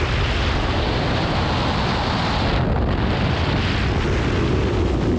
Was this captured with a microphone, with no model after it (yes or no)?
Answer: yes